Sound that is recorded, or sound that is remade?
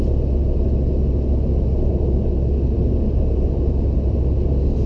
recorded